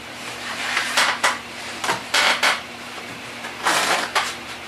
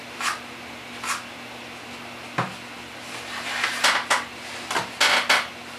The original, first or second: second